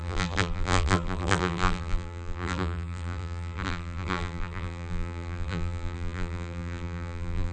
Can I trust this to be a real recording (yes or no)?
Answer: no